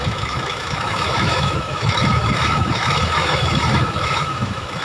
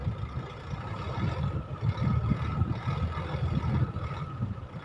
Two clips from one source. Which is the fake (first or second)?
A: first